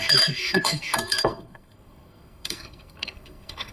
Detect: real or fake fake